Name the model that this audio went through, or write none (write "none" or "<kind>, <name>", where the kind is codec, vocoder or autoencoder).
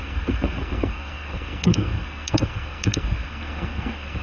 codec, SNAC